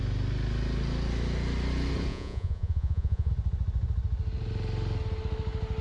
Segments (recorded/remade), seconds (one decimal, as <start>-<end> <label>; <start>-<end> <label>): 0.0-2.1 recorded; 2.1-3.3 remade; 3.3-5.8 recorded